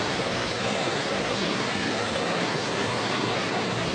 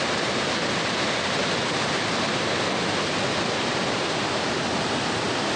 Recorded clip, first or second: second